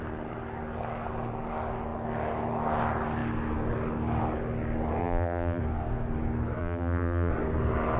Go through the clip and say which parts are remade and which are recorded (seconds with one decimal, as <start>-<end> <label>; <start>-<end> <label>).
0.0-5.0 recorded; 5.0-5.6 remade; 5.6-6.6 recorded; 6.6-7.3 remade; 7.3-8.0 recorded